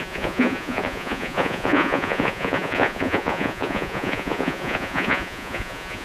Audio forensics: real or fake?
fake